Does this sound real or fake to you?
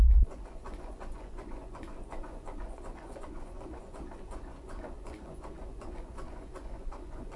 fake